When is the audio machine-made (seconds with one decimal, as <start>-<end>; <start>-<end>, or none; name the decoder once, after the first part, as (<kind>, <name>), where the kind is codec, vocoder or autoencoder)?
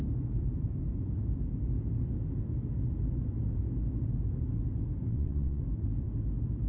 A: 5.1-5.6 (vocoder, WaveNeXt)